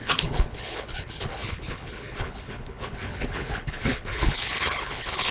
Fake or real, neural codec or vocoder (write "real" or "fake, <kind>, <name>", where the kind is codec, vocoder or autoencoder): fake, codec, HILCodec